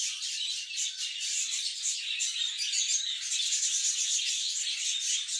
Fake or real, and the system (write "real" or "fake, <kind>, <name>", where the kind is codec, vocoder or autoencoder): real